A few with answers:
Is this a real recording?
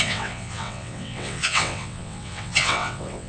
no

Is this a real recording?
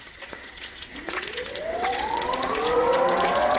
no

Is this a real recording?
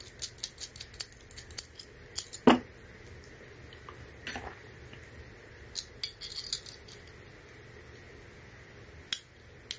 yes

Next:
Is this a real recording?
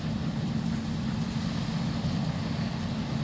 yes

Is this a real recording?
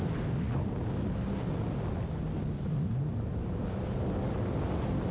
yes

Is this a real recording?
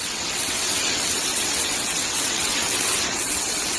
no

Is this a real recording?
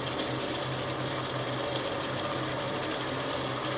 yes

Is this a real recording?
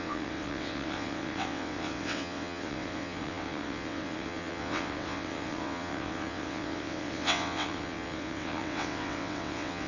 no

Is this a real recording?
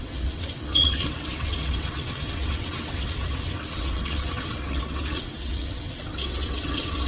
no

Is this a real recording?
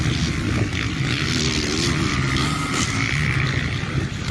yes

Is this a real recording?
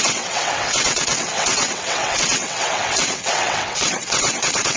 no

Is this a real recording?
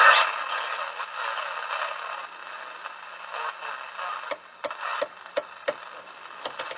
yes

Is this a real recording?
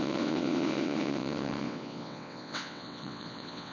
no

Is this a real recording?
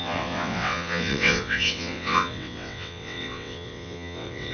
no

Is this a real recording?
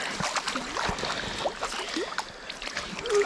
yes